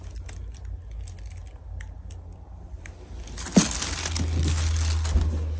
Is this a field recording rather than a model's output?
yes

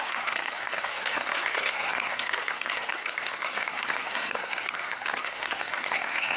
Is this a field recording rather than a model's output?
no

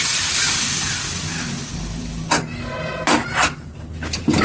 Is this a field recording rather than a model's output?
yes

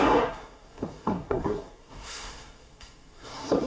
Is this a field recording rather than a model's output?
no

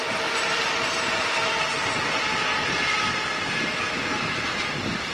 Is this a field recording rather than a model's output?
yes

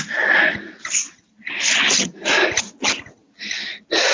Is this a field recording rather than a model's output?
yes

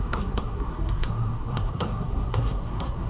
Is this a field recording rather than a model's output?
no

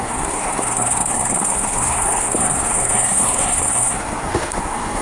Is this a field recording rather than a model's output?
no